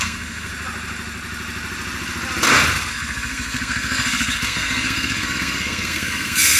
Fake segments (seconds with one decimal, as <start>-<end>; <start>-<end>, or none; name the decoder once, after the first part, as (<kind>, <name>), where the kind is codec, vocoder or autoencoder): 0.0-0.5 (codec, SNAC); 2.9-6.6